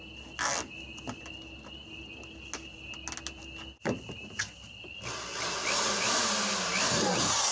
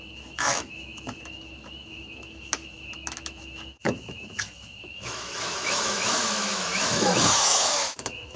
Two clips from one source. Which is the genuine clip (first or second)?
first